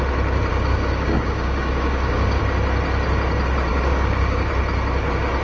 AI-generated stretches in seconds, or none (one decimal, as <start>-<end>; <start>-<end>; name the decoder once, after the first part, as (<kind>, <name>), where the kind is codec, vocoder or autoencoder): 0.5-2.4 (codec, DAC); 3.7-4.5